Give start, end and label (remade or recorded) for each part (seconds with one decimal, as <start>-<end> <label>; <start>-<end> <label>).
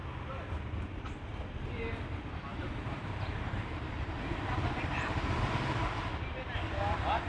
0.0-2.5 recorded; 2.5-6.0 remade; 6.0-7.3 recorded